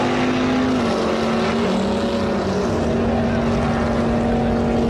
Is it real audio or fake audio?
real